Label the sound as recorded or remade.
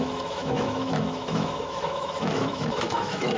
remade